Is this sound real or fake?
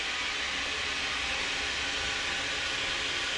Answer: real